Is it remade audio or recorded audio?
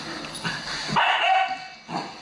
recorded